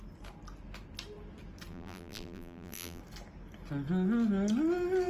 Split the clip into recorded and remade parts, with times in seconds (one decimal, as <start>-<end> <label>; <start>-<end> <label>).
0.0-1.7 recorded; 1.7-3.0 remade; 3.0-5.1 recorded